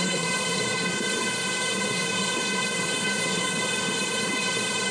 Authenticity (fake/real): fake